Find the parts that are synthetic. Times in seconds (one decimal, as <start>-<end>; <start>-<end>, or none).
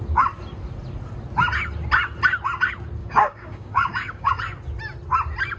3.0-4.3